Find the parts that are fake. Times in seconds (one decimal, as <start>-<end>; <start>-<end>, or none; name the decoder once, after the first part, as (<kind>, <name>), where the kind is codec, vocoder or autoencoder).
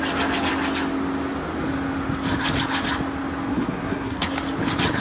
3.5-4.3 (codec, SNAC)